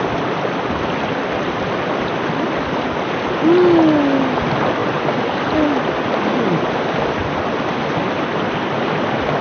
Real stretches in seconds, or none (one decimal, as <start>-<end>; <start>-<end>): 0.0-9.4

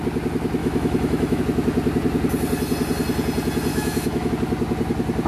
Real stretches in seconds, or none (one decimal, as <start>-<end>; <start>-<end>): 0.0-0.6; 1.4-3.7; 4.3-5.3

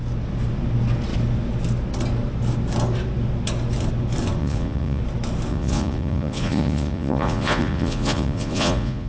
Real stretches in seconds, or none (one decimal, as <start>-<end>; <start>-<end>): 0.0-4.4; 5.0-5.5

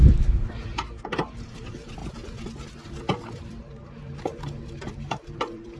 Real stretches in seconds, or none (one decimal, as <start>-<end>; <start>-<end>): 2.0-3.5

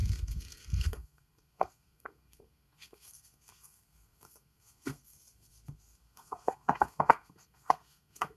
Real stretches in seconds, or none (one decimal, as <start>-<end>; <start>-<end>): none

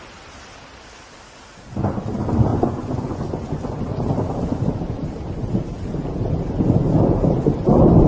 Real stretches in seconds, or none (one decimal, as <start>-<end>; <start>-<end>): 0.0-2.5; 3.8-8.1

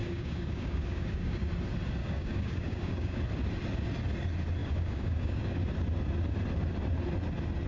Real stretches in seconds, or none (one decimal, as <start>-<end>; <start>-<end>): 1.5-2.0; 3.2-4.6; 5.6-7.7

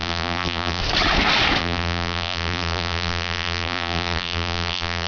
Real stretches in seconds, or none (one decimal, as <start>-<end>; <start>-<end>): 0.8-1.6